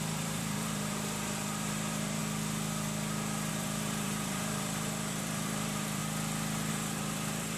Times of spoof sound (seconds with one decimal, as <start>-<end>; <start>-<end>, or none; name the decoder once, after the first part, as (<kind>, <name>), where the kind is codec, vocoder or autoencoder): 0.0-2.2 (vocoder, BigVGAN v2); 3.5-6.0; 6.7-7.6